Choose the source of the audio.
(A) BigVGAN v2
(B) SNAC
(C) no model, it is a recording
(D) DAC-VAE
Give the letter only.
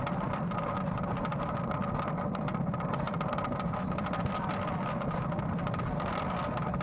A